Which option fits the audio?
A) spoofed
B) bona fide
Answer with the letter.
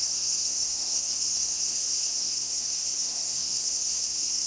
A